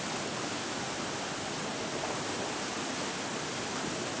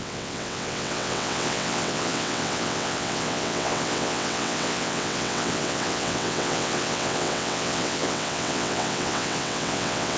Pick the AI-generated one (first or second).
second